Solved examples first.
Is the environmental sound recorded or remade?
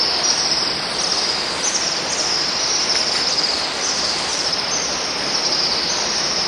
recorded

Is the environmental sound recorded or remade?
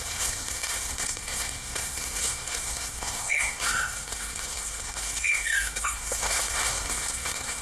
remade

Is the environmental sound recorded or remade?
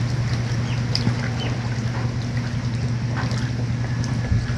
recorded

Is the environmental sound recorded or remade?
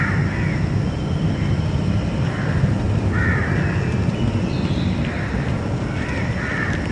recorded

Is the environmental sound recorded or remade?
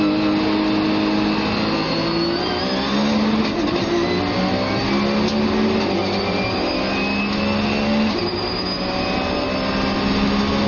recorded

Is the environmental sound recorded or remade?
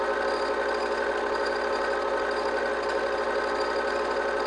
recorded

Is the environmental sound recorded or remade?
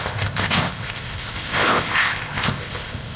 remade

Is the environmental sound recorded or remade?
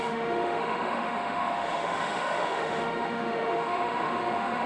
remade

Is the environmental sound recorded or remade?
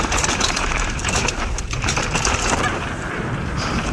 remade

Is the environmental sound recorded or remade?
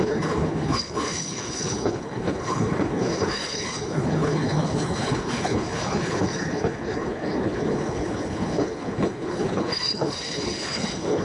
remade